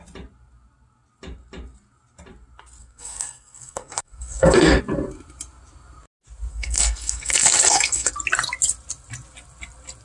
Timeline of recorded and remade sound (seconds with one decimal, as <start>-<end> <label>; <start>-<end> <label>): 0.0-2.8 recorded; 2.8-4.8 remade; 4.8-6.5 recorded; 6.5-8.1 remade; 8.1-10.0 recorded